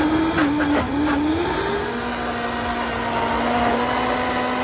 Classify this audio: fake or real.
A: real